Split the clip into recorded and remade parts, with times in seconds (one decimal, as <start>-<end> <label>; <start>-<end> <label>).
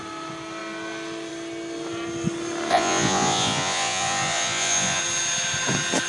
0.0-2.7 recorded; 2.7-5.0 remade; 5.0-6.1 recorded